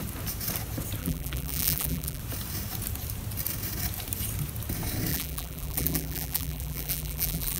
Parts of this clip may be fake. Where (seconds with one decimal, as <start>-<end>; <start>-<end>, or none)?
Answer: 1.0-2.2; 5.1-7.6

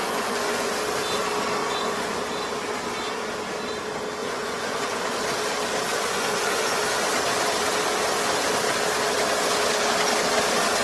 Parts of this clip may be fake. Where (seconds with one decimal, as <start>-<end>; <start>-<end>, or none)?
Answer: 0.0-0.7; 1.6-2.2; 4.2-5.0; 5.9-6.8

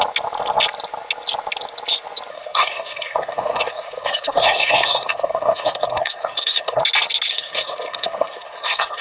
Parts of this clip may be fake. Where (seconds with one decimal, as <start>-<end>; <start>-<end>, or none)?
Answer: 2.3-6.8; 7.3-9.0

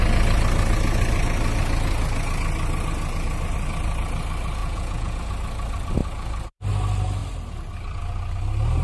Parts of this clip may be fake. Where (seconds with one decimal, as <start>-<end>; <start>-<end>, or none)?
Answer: 4.6-5.2

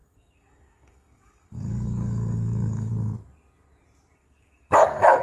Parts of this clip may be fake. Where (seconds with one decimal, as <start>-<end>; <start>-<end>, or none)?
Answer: 0.0-2.9; 4.2-5.2

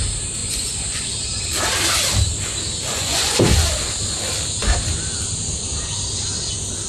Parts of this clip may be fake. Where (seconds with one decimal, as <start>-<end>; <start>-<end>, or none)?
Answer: 0.4-1.1; 2.9-3.4